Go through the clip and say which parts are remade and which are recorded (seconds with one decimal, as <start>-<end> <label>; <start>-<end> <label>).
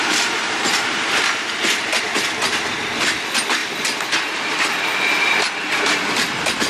0.0-1.1 remade; 1.1-6.7 recorded